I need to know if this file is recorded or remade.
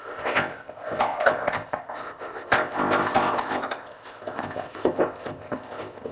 remade